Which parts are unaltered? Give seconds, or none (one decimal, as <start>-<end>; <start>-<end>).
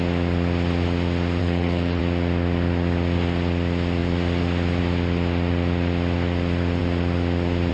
0.0-1.4; 2.0-7.7